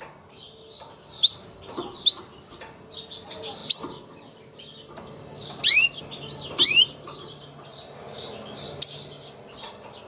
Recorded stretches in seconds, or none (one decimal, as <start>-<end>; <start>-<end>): 0.0-10.1